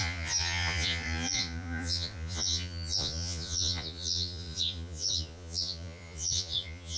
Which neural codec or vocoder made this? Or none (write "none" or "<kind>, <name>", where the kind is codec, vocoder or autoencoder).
vocoder, Vocos